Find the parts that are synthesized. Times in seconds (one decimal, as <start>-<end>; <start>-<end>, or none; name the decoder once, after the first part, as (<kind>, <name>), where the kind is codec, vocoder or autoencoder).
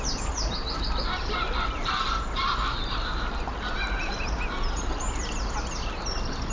none